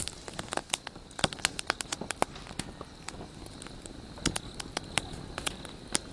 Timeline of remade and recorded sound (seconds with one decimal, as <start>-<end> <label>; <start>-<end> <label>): 0.0-6.1 recorded